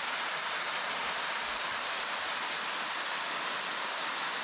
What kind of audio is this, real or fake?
fake